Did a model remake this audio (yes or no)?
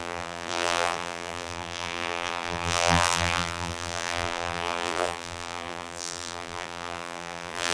yes